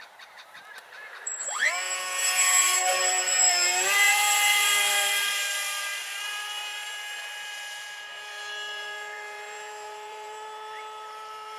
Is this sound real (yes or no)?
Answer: no